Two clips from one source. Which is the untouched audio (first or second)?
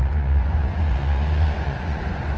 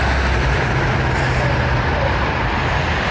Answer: second